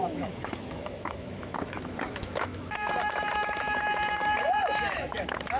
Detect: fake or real fake